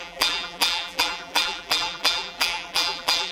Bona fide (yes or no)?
no